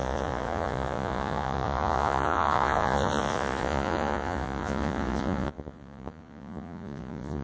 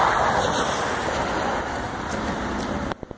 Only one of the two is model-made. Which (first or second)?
first